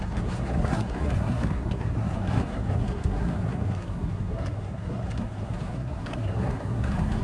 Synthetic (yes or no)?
yes